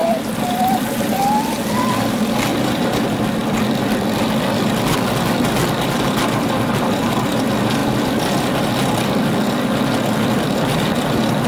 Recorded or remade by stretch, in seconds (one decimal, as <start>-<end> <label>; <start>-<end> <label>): 0.0-11.5 recorded